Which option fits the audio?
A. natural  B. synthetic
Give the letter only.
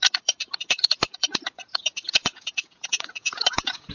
B